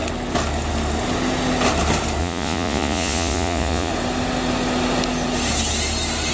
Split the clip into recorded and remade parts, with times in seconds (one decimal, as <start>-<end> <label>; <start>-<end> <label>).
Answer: 0.0-2.2 recorded; 2.2-3.9 remade; 3.9-6.3 recorded